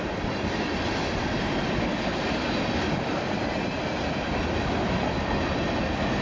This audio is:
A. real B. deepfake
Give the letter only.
A